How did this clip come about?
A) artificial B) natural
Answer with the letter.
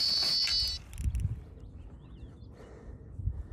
B